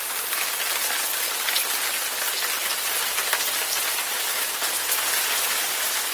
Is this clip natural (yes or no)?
yes